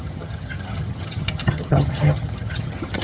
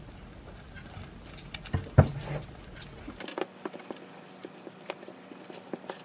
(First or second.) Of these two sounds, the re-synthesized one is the first